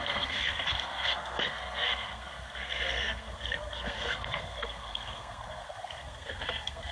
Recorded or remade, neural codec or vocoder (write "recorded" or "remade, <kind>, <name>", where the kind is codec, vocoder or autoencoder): remade, codec, SNAC